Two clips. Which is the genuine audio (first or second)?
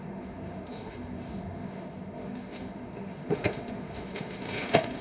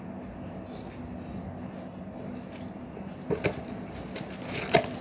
second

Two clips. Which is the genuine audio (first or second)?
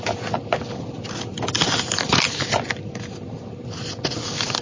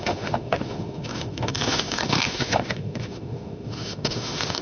first